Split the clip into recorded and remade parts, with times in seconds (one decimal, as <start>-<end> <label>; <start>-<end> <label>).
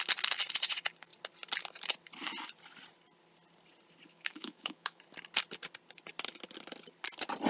0.0-4.1 recorded; 4.1-5.0 remade; 5.0-7.5 recorded